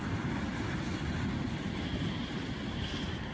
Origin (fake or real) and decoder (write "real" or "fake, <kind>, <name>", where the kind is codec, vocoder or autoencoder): real